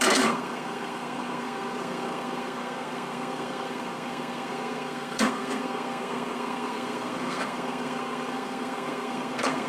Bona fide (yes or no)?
no